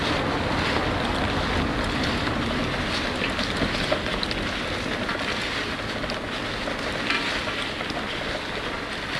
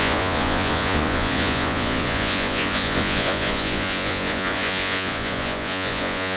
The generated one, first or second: second